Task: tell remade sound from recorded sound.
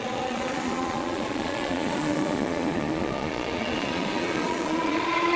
remade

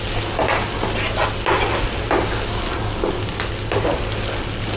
recorded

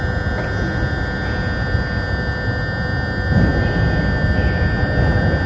recorded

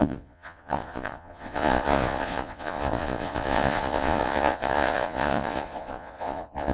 remade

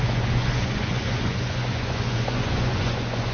remade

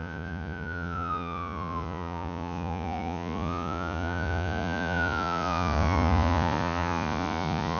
remade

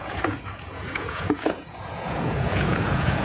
remade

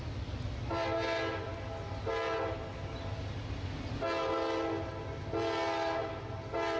recorded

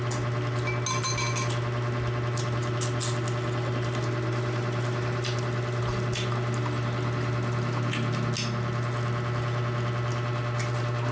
recorded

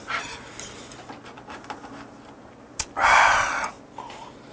recorded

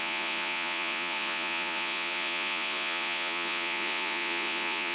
remade